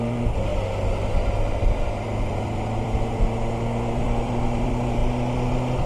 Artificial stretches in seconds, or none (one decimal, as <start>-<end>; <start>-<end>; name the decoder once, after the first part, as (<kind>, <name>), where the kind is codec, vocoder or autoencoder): 0.0-0.5 (vocoder, BigVGAN v2); 1.5-5.0